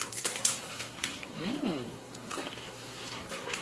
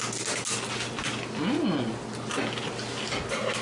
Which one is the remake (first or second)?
first